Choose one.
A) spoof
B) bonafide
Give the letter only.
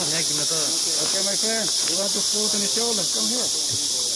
B